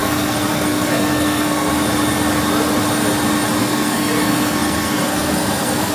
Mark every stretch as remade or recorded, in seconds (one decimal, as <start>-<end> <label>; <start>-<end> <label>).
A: 0.0-1.7 remade; 1.7-3.6 recorded; 3.6-5.9 remade